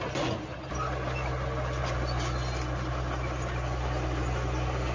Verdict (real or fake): real